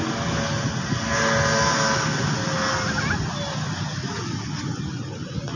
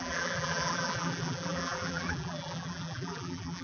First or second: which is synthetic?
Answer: second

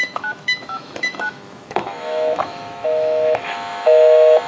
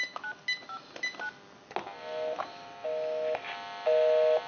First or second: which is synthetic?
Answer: first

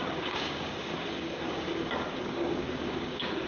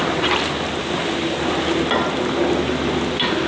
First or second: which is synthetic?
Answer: first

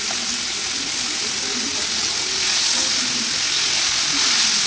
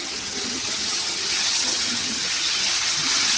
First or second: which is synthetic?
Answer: second